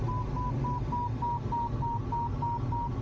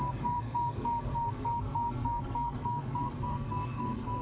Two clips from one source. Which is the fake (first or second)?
second